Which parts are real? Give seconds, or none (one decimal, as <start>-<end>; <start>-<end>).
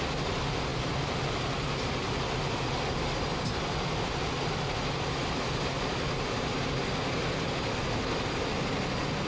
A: 0.0-9.3